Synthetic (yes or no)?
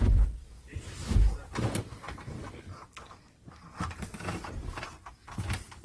no